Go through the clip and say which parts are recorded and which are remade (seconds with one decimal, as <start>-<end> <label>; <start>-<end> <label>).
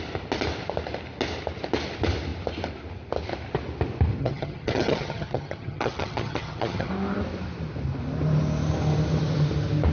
0.0-4.2 recorded; 4.2-6.9 remade; 6.9-9.9 recorded